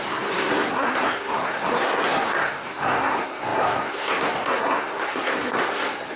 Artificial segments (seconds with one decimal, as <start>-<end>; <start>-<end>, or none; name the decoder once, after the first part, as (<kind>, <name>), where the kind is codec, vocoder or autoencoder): 0.0-6.2 (codec, SNAC)